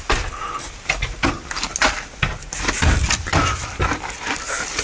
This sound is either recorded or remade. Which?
recorded